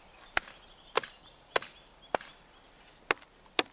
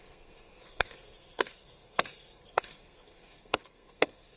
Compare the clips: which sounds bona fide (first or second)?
first